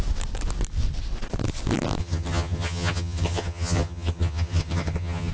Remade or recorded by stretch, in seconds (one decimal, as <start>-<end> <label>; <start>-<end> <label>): 0.0-2.0 recorded; 2.0-5.3 remade